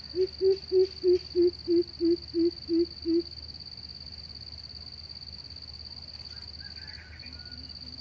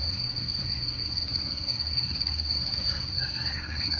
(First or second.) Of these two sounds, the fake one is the second